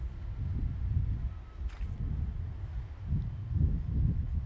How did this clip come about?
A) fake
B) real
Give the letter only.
B